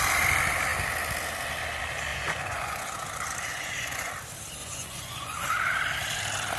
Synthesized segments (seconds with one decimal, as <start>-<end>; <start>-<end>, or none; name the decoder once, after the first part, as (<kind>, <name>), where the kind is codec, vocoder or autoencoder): 2.1-2.9 (vocoder, Vocos); 3.5-4.1; 4.6-5.5